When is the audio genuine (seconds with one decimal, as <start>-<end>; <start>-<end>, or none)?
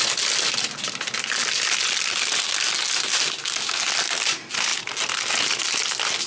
0.0-6.3